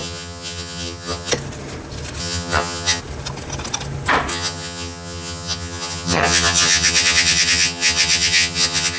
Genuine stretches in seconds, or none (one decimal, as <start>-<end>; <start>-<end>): 1.3-2.2; 3.0-4.3